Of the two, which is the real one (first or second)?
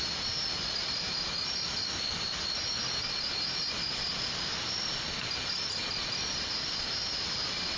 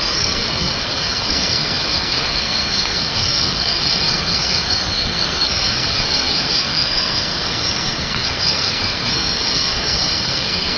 first